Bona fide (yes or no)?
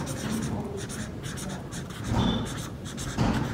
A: no